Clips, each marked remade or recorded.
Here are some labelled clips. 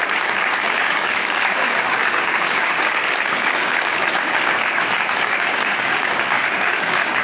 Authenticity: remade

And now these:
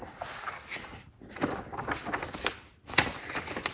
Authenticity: recorded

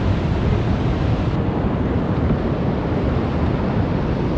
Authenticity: recorded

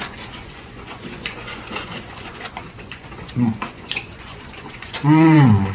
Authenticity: remade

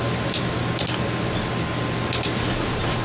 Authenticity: recorded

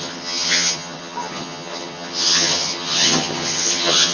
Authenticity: remade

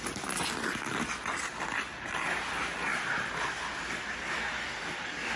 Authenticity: recorded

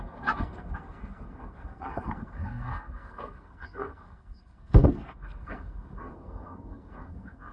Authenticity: remade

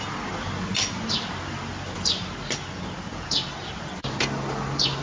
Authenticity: recorded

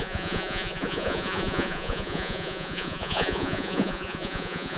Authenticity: remade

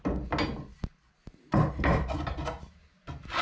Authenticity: recorded